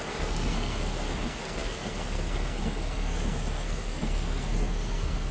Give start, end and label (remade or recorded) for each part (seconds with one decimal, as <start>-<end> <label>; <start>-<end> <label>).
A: 0.0-5.3 remade